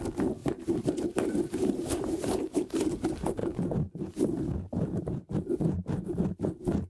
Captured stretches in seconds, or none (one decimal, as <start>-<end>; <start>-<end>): 0.0-0.4; 2.9-6.9